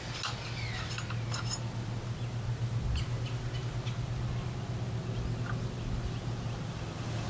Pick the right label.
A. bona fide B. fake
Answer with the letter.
A